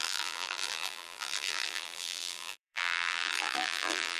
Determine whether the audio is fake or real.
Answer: fake